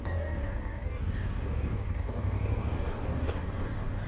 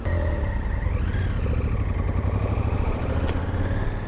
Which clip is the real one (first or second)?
second